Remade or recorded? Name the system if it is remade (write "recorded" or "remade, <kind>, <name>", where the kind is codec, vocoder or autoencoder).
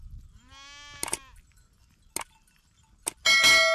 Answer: recorded